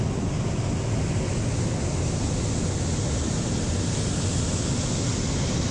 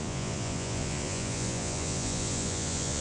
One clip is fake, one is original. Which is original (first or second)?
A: first